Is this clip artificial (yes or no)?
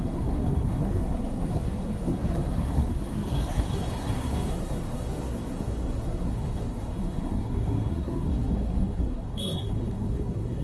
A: yes